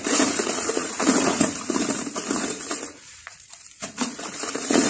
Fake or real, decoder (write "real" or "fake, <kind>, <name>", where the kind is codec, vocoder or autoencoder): fake, vocoder, Vocos